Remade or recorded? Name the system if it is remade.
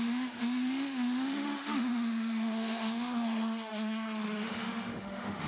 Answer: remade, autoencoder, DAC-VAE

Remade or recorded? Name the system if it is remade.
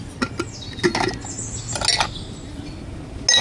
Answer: recorded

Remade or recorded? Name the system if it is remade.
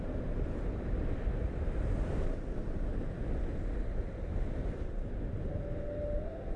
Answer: recorded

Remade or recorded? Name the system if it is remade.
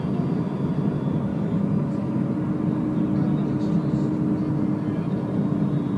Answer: recorded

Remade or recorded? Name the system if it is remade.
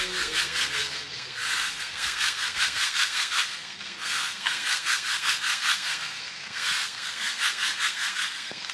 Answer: remade, codec, SNAC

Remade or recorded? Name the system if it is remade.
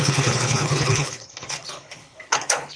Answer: remade, codec, HILCodec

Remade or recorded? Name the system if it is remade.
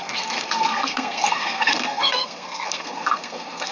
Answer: remade, codec, SNAC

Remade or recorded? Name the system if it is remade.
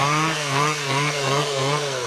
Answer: remade, codec, SNAC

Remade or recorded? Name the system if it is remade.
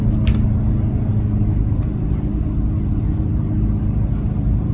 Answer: recorded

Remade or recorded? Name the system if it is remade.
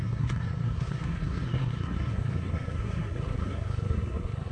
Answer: remade, codec, SNAC